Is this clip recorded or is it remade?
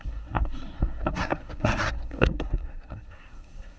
remade